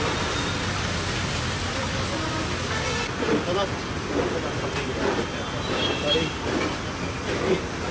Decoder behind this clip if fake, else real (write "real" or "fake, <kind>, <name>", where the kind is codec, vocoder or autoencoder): real